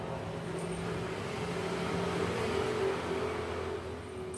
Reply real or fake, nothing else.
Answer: real